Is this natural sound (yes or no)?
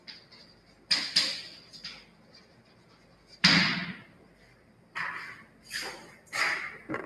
no